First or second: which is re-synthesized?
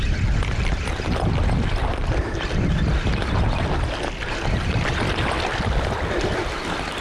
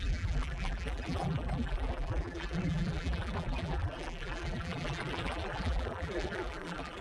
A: second